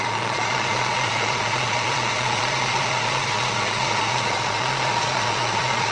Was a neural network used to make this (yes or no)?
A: yes